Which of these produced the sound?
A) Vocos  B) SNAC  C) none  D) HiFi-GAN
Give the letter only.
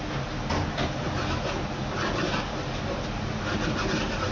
C